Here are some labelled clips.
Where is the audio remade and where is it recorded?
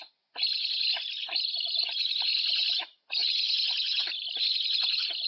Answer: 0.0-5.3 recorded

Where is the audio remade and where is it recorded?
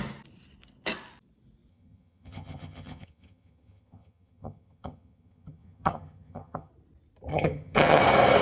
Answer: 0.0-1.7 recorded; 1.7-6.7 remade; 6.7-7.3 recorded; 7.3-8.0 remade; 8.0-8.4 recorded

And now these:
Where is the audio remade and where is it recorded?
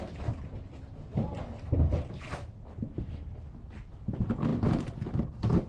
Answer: 0.0-5.7 recorded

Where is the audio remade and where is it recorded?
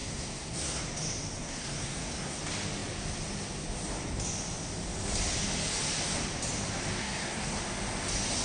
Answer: 0.0-0.8 remade; 0.8-1.4 recorded; 1.4-2.4 remade; 2.4-7.0 recorded; 7.0-7.6 remade; 7.6-8.4 recorded